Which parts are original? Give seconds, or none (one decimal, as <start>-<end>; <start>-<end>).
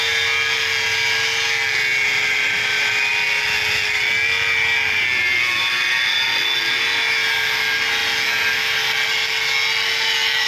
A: 0.0-10.5